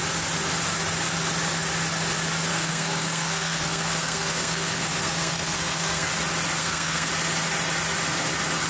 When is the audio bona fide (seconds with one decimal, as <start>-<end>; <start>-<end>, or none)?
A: 0.0-2.5; 6.1-6.6; 7.1-8.7